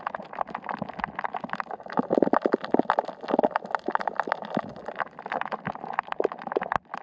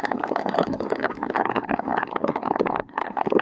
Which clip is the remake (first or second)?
second